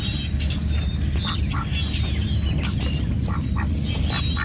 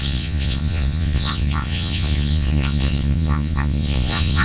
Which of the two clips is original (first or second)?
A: first